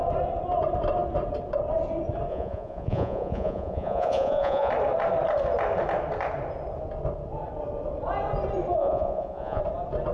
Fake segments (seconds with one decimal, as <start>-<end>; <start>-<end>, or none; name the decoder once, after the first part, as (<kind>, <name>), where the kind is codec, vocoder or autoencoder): 2.3-4.7 (vocoder, Vocos); 8.8-9.6